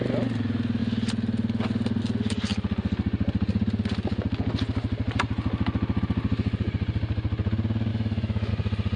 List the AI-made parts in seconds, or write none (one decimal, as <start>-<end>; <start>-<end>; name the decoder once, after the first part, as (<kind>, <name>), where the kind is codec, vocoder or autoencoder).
7.9-8.5 (autoencoder, DAC-VAE)